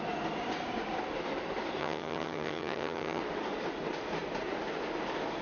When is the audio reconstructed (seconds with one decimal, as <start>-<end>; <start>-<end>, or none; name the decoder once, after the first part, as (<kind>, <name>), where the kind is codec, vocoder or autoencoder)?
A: 1.8-3.2 (vocoder, HiFi-GAN)